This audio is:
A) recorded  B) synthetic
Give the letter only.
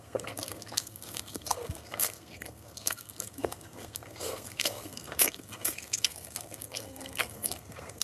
B